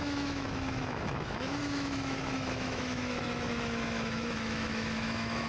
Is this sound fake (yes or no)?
yes